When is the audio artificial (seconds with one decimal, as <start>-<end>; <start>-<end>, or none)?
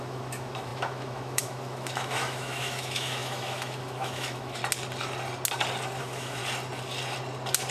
0.0-4.6; 6.0-6.4